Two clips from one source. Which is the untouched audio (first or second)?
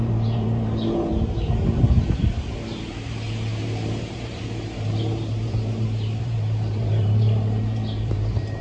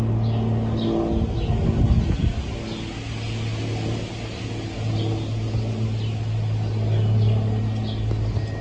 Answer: second